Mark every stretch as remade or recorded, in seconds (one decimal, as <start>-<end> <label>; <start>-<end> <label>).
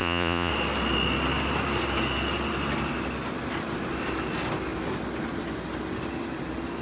0.0-0.5 remade; 0.5-6.8 recorded